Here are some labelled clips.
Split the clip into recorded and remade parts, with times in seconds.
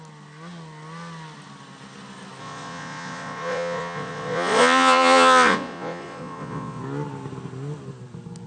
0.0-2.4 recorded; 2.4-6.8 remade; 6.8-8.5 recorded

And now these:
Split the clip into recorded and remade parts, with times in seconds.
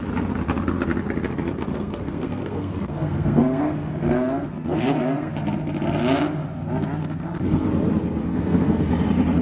0.0-1.7 recorded; 1.7-5.3 remade; 5.3-7.0 recorded; 7.0-7.7 remade; 7.7-8.2 recorded; 8.2-8.8 remade; 8.8-9.4 recorded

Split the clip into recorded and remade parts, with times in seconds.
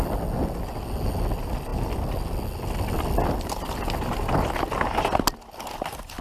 0.0-6.2 recorded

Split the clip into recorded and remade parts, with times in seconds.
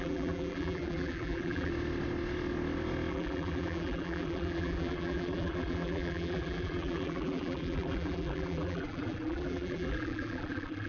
0.0-1.7 remade; 1.7-3.1 recorded; 3.1-10.9 remade